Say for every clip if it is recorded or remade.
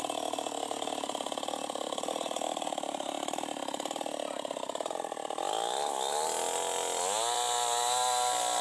recorded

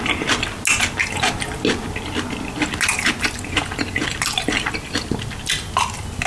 recorded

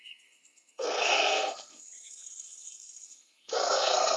remade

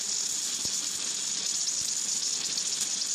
recorded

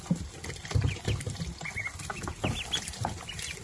recorded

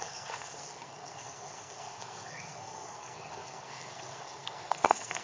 remade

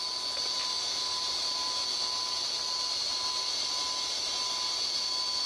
recorded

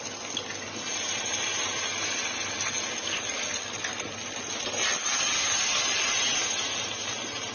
recorded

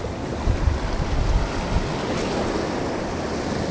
recorded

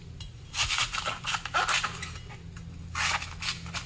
recorded